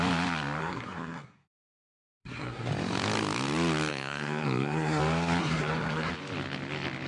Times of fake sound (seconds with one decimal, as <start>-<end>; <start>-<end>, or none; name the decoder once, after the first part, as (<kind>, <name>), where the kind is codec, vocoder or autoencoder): 0.6-2.7 (codec, SNAC); 3.9-5.0; 5.4-6.1